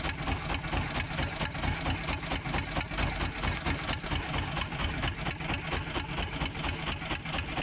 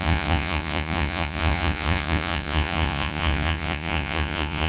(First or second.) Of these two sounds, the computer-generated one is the second